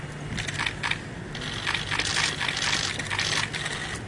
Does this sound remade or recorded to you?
recorded